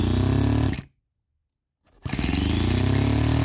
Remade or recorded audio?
recorded